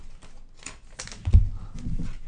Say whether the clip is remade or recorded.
recorded